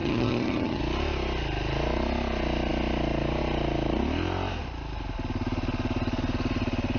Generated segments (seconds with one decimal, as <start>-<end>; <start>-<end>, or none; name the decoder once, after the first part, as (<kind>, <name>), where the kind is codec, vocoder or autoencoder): 0.0-0.8 (vocoder, HiFi-GAN)